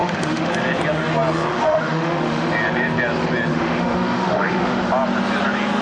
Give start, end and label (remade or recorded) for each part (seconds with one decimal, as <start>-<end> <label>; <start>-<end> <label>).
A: 0.0-0.5 remade; 0.5-1.5 recorded; 1.5-2.5 remade; 2.5-3.5 recorded; 3.5-4.8 remade; 4.8-5.8 recorded

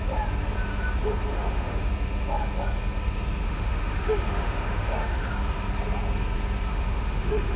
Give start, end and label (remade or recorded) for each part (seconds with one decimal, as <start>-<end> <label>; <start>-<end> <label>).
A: 0.0-1.3 recorded; 1.3-1.9 remade; 1.9-3.4 recorded; 3.4-5.3 remade; 5.3-6.7 recorded; 6.7-7.6 remade

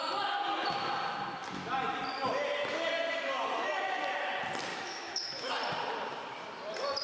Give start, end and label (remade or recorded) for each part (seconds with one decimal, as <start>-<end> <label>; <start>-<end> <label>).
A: 0.0-4.7 recorded; 4.7-5.5 remade; 5.5-7.0 recorded

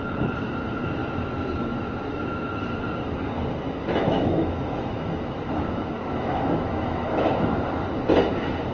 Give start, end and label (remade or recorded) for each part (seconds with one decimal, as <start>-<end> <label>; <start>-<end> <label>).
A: 0.0-1.0 recorded; 1.0-2.6 remade; 2.6-3.8 recorded; 3.8-7.7 remade; 7.7-8.7 recorded

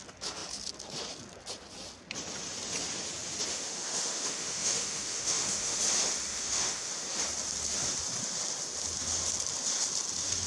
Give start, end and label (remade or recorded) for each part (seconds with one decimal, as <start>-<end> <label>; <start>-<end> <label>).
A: 0.0-3.5 recorded; 3.5-5.8 remade; 5.8-6.3 recorded; 6.3-6.9 remade; 6.9-10.5 recorded

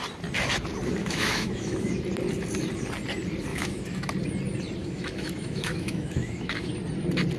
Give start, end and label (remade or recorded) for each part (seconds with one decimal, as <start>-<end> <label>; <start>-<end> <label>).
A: 0.0-1.0 recorded; 1.0-1.9 remade; 1.9-3.5 recorded; 3.5-4.1 remade; 4.1-4.8 recorded; 4.8-6.7 remade; 6.7-7.4 recorded

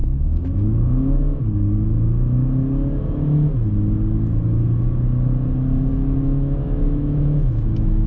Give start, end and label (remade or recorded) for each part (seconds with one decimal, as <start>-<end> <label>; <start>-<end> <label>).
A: 0.0-1.4 remade; 1.4-5.9 recorded; 5.9-8.1 remade

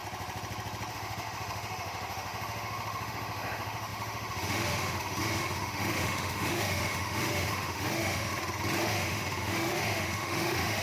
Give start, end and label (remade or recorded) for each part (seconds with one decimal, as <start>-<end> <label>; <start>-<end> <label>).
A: 0.0-0.9 recorded; 0.9-8.3 remade; 8.3-8.8 recorded; 8.8-10.8 remade